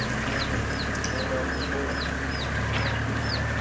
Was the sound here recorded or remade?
recorded